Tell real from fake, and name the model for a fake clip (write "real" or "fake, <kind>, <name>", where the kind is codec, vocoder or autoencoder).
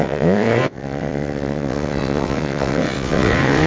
fake, vocoder, WaveNeXt